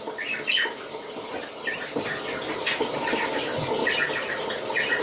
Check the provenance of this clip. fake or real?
real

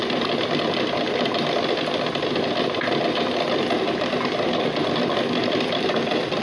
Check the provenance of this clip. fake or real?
real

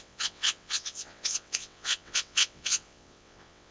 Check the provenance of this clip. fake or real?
fake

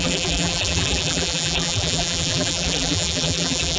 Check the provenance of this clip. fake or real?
fake